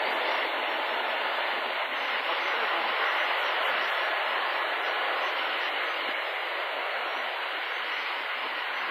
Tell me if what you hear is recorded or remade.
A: recorded